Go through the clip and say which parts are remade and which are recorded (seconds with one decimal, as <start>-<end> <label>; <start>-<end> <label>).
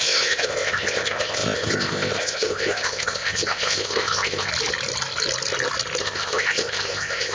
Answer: 0.0-4.5 remade; 4.5-6.0 recorded; 6.0-7.3 remade